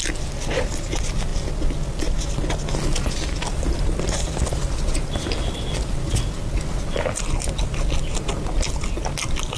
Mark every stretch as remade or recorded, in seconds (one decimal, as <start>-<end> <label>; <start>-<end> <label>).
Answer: 0.0-3.5 recorded; 3.5-6.1 remade; 6.1-9.6 recorded